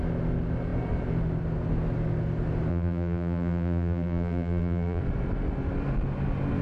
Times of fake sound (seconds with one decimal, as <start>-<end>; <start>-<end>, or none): 2.7-5.0